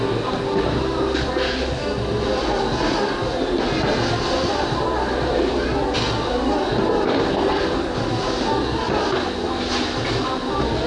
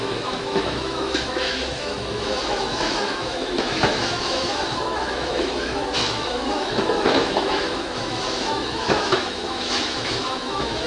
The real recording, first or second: first